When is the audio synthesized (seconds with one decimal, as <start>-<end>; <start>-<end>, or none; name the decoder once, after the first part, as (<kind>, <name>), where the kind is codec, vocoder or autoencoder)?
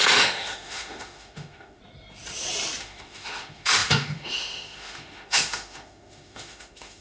0.0-1.8 (autoencoder, DAC-VAE); 2.8-7.0